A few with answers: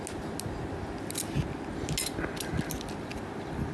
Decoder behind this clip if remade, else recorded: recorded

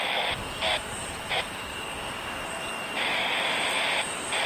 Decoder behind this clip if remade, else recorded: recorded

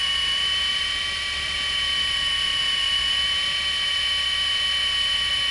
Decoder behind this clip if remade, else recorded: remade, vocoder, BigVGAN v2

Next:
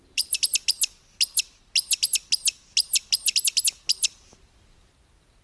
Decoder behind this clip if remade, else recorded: recorded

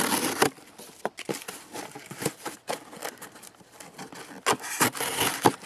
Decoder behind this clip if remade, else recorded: recorded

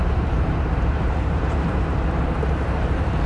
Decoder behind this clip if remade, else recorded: remade, vocoder, BigVGAN v2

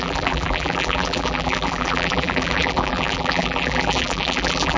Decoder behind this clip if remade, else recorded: remade, vocoder, BigVGAN v2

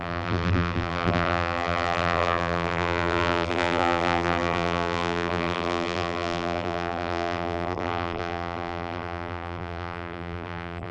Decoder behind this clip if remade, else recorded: remade, vocoder, BigVGAN v2